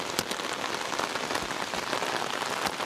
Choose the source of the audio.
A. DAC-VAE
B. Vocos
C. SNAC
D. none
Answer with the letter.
D